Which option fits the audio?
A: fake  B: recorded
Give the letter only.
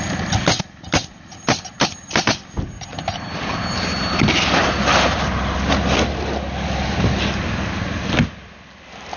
B